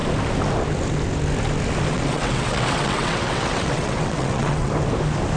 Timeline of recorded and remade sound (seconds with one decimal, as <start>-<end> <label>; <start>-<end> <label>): 0.0-1.9 recorded; 1.9-4.7 remade; 4.7-5.4 recorded